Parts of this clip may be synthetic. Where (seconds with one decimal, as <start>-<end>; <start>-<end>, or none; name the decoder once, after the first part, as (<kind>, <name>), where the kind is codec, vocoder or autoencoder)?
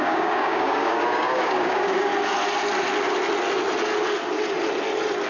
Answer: 0.0-2.1 (codec, DAC)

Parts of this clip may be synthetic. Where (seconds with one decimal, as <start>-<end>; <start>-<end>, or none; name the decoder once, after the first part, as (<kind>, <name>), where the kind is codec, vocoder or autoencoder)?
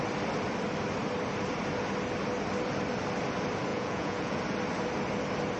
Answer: 3.7-4.4 (vocoder, Vocos)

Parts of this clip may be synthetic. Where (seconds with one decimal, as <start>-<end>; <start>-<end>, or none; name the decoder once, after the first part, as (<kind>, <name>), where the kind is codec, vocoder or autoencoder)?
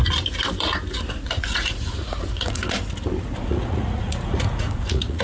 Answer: 1.1-2.6 (vocoder, Vocos); 3.2-5.2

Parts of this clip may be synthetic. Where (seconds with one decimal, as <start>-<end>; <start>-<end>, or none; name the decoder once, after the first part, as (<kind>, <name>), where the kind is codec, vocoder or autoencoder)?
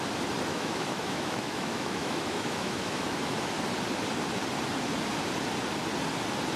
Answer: 0.5-3.5 (autoencoder, DAC-VAE)